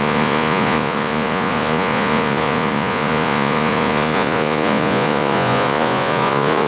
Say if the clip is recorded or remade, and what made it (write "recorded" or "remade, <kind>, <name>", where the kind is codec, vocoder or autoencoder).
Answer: remade, vocoder, Vocos